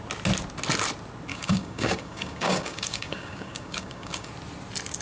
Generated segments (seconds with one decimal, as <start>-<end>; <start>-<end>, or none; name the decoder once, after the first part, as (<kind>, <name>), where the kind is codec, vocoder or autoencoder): 1.3-4.3 (codec, DAC)